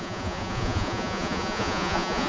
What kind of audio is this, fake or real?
fake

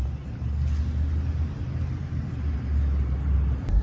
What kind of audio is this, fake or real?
real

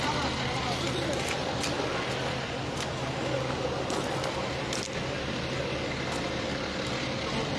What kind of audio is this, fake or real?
real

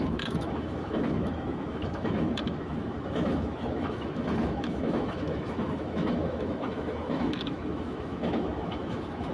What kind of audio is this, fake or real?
fake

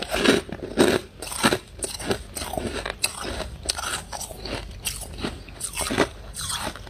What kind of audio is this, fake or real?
real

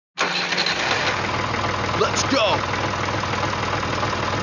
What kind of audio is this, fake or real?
real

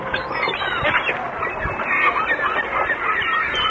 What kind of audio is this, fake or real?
real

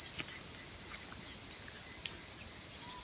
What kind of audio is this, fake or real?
real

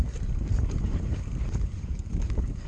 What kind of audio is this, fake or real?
fake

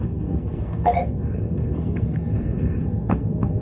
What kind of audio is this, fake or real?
fake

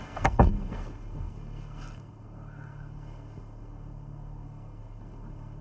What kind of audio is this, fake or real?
fake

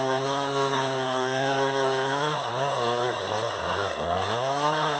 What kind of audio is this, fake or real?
fake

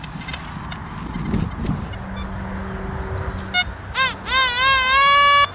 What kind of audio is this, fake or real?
real